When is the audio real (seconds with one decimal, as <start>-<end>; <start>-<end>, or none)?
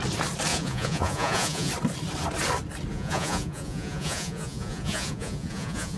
0.0-0.5; 1.7-2.9